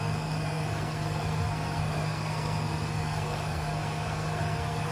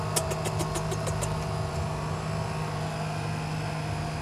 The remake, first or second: first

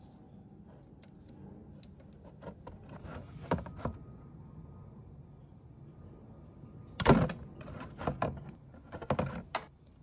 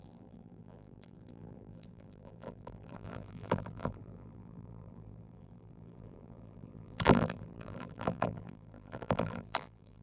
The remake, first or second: second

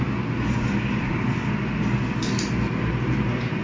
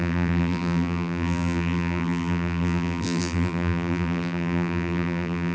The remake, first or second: second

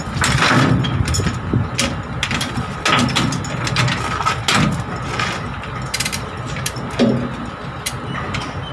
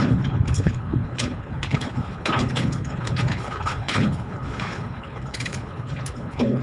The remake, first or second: second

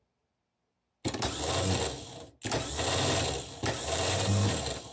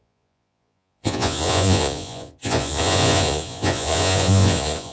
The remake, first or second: second